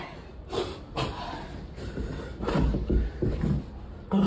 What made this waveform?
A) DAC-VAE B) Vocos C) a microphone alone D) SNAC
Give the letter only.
C